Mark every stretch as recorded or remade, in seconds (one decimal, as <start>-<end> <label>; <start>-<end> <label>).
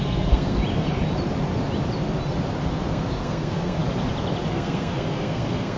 0.0-0.6 remade; 0.6-2.6 recorded; 2.6-3.8 remade; 3.8-4.5 recorded; 4.5-5.8 remade